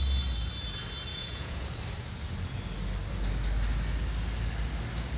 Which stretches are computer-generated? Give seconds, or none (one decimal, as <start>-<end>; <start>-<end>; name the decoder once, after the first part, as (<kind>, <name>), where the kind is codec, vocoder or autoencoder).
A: 1.1-1.7 (vocoder, Vocos)